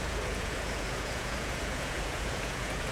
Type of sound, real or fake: fake